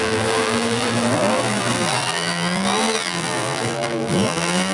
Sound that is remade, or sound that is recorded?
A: remade